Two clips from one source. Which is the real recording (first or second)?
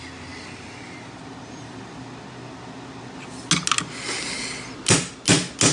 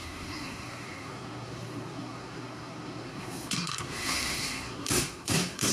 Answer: first